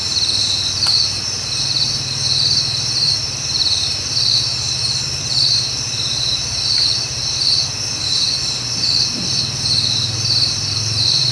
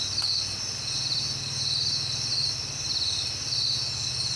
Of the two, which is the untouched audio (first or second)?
second